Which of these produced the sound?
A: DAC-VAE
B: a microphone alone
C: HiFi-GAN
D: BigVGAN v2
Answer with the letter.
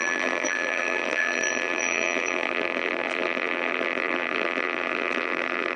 D